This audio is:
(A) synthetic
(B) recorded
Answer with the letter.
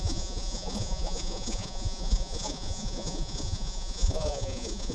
A